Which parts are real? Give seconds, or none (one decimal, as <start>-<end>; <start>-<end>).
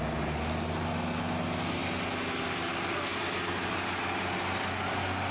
0.0-5.3